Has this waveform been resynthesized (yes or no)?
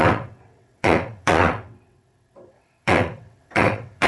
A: yes